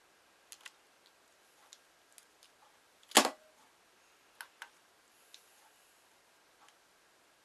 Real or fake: real